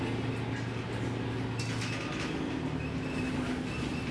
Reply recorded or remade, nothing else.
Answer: recorded